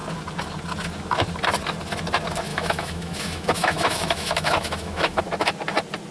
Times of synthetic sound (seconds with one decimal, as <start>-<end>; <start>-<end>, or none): 2.5-5.2

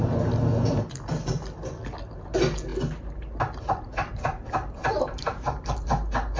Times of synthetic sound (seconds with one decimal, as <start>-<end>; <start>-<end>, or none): 4.8-5.9

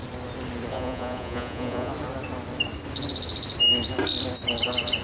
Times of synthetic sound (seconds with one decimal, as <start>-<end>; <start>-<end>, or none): 0.7-1.9

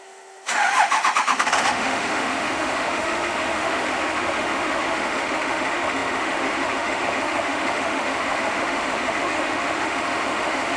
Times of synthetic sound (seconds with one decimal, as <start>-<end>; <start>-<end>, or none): 0.0-10.8

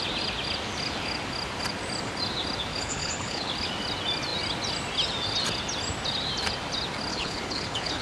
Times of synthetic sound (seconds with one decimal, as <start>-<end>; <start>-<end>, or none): 2.7-3.5; 7.1-8.0